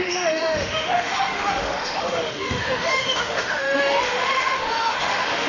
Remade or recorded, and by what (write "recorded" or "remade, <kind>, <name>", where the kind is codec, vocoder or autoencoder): remade, autoencoder, DAC-VAE